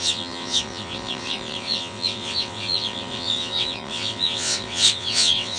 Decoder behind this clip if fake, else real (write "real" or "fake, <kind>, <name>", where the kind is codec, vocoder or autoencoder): fake, vocoder, WaveNeXt